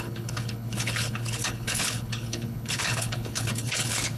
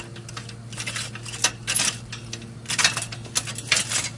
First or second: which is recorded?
second